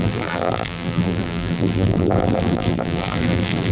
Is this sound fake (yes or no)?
yes